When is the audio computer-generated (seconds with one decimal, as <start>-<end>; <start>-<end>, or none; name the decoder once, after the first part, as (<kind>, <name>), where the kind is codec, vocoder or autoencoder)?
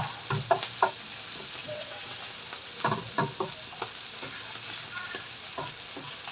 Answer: 1.6-2.2 (vocoder, WaveNeXt)